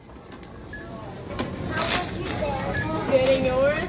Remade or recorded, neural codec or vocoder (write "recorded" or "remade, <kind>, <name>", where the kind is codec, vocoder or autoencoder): recorded